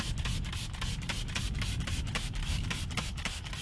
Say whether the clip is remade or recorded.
recorded